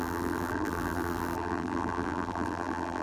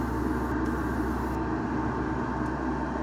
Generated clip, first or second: first